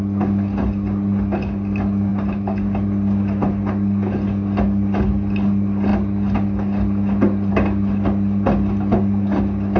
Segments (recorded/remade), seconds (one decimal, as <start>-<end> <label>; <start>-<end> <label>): 0.0-9.8 recorded